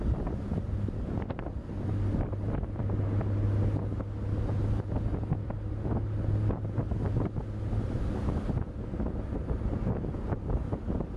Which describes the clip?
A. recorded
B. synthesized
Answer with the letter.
A